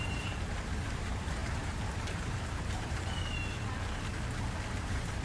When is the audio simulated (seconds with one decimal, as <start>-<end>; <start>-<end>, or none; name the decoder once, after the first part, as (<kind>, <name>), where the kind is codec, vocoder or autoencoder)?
0.0-3.2 (vocoder, BigVGAN v2); 4.7-5.2